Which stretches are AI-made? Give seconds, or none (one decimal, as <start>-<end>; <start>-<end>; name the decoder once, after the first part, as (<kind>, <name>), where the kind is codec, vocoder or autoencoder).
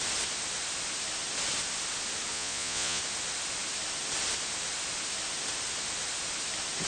2.3-3.0 (vocoder, Vocos)